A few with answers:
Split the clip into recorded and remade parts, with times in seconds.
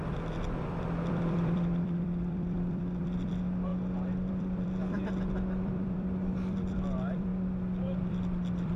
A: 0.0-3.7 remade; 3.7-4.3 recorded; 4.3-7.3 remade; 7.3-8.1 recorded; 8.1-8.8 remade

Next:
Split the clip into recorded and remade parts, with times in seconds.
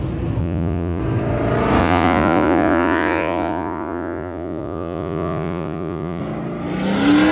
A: 0.0-0.4 recorded; 0.4-1.0 remade; 1.0-1.8 recorded; 1.8-6.2 remade; 6.2-7.3 recorded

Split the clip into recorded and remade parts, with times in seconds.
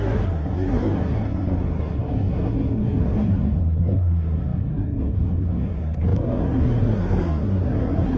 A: 0.0-8.2 remade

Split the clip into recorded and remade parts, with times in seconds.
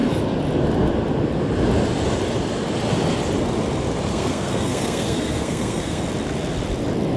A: 0.0-4.1 recorded; 4.1-6.0 remade; 6.0-7.2 recorded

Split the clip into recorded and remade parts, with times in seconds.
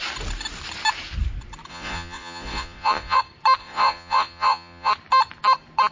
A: 0.0-1.7 recorded; 1.7-3.2 remade; 3.2-3.6 recorded; 3.6-4.9 remade; 4.9-5.9 recorded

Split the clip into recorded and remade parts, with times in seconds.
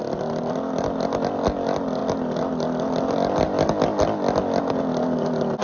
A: 0.0-5.6 recorded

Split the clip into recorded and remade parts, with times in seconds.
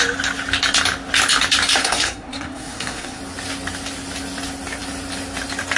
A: 0.0-1.8 recorded; 1.8-3.2 remade; 3.2-5.8 recorded